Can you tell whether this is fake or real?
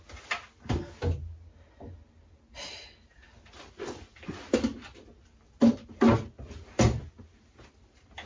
real